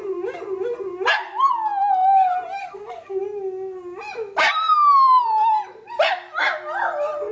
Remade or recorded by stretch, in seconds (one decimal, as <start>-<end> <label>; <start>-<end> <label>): 0.0-2.6 recorded; 2.6-3.2 remade; 3.2-7.3 recorded